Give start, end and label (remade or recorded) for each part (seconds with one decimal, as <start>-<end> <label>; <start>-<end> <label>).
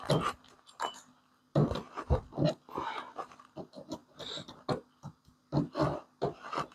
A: 0.0-6.7 recorded